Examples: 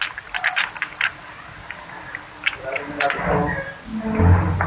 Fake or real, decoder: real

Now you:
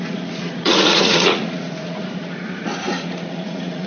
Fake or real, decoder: fake, vocoder, Vocos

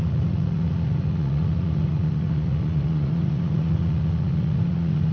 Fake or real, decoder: fake, vocoder, Vocos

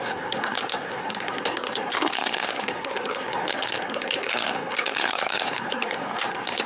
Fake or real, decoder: fake, codec, SNAC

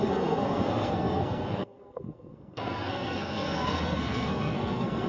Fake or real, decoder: fake, codec, SNAC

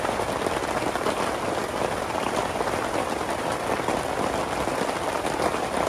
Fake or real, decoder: real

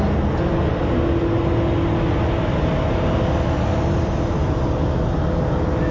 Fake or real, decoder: real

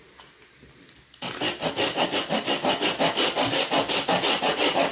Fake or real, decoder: real